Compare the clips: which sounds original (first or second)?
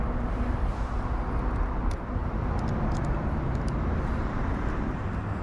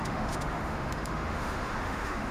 first